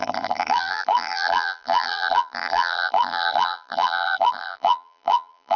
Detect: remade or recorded remade